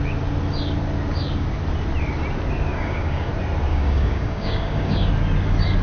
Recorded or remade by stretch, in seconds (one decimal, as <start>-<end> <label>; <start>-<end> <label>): 0.0-2.7 recorded; 2.7-3.3 remade; 3.3-3.7 recorded; 3.7-5.1 remade; 5.1-5.8 recorded